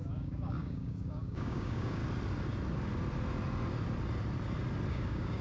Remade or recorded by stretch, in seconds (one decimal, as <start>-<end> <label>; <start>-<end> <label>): 0.0-2.0 remade; 2.0-4.9 recorded; 4.9-5.4 remade